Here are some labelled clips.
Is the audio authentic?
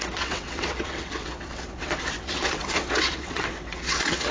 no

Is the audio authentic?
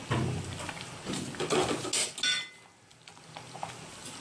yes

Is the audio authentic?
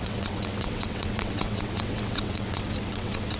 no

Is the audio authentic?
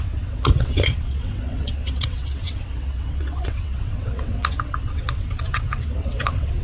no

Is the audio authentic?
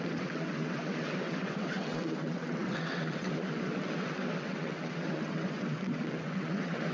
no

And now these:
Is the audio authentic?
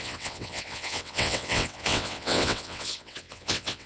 no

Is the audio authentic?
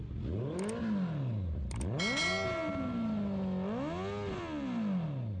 yes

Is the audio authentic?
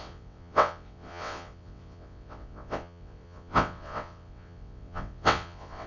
no